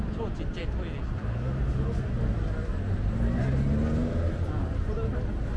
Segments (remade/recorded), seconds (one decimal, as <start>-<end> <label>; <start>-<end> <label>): 0.0-5.6 recorded